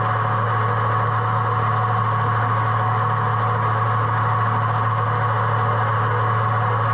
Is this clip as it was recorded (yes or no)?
yes